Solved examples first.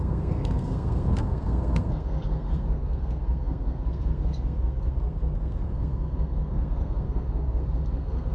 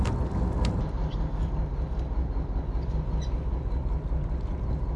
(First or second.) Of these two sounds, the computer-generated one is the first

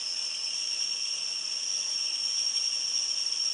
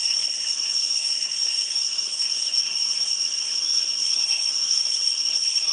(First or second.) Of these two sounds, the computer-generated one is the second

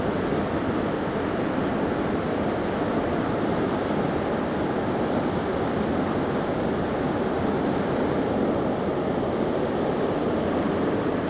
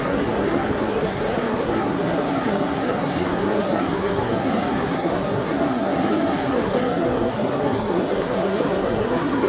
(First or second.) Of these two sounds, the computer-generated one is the second